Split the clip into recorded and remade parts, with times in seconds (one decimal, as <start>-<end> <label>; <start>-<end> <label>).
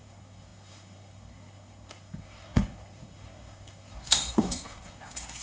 0.0-5.4 remade